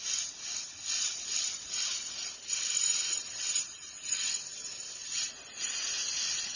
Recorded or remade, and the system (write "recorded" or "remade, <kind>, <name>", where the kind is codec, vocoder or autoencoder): recorded